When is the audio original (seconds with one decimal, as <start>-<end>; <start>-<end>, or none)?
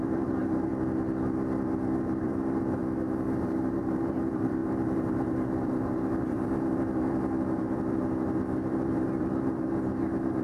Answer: 0.7-2.0; 2.8-3.4